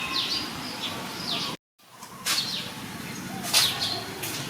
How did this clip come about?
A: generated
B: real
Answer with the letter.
B